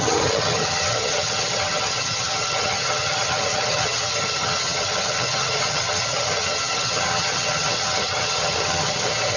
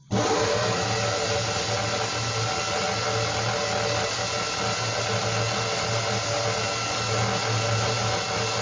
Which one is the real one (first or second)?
second